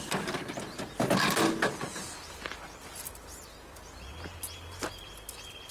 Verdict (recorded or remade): recorded